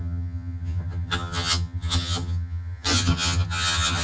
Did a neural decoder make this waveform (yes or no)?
yes